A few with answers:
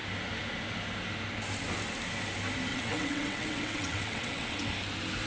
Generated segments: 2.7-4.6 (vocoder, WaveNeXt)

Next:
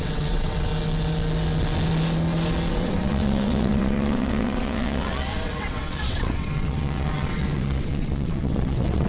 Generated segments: 0.0-0.7 (vocoder, WaveNeXt); 2.7-9.1

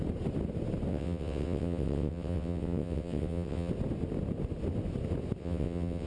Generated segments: 0.9-3.7 (vocoder, WaveNeXt); 5.4-6.1